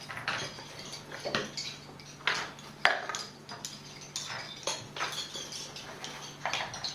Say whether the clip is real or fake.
real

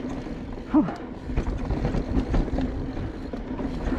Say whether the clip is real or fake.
real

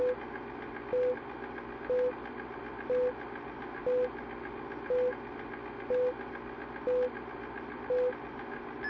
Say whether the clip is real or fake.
real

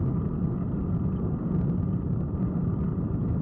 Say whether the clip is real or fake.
real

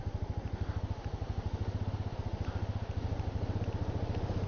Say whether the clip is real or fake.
real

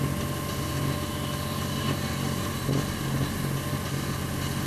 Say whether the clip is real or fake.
real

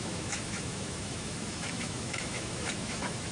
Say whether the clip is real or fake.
fake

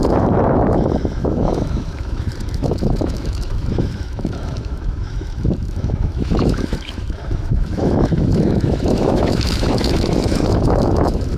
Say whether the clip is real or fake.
fake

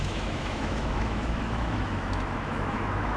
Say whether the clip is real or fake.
fake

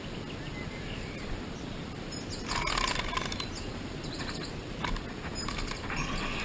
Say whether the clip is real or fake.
real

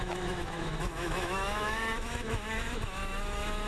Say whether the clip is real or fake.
fake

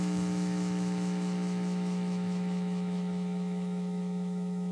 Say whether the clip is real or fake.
fake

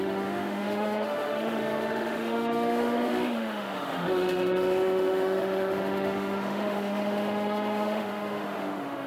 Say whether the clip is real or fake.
fake